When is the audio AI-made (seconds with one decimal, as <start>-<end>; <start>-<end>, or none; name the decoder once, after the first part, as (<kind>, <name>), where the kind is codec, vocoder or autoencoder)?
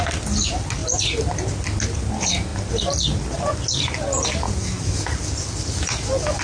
none